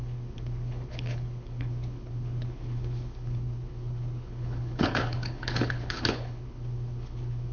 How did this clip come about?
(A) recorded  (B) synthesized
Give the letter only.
B